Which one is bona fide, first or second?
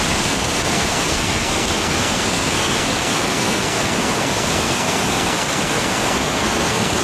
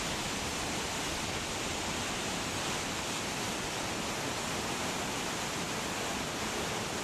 second